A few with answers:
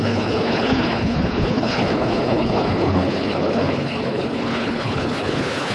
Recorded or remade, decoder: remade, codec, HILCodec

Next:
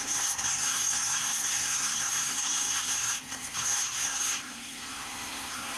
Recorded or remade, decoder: remade, codec, SNAC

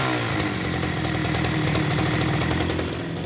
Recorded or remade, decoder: recorded